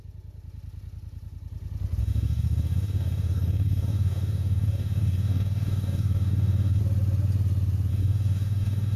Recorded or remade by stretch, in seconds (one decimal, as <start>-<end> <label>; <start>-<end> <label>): 0.0-2.0 recorded; 2.0-6.8 remade; 6.8-7.9 recorded; 7.9-9.0 remade